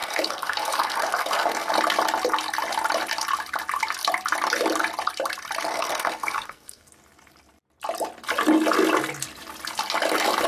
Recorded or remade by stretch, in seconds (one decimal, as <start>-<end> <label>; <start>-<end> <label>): 0.0-1.7 remade; 1.7-5.7 recorded; 5.7-6.9 remade; 6.9-10.5 recorded